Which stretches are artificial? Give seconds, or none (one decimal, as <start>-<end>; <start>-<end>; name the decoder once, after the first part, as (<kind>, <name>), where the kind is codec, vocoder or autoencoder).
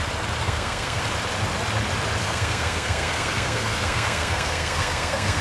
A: 0.4-1.0 (codec, SNAC); 2.2-5.4